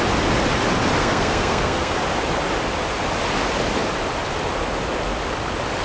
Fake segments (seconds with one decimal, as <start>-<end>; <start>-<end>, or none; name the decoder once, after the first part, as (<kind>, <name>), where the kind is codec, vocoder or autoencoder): 1.0-2.0 (codec, SNAC)